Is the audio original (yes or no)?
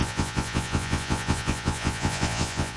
no